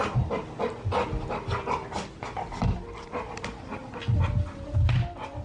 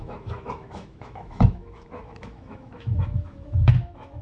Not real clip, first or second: second